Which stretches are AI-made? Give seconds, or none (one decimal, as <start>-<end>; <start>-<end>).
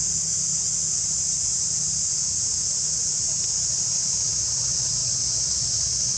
3.7-5.0; 5.7-6.2